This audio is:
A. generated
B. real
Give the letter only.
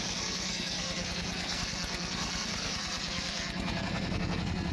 A